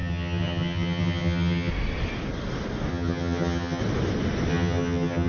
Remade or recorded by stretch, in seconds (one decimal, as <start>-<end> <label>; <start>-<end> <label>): 0.0-1.7 remade; 1.7-2.9 recorded; 2.9-3.8 remade; 3.8-4.5 recorded; 4.5-5.3 remade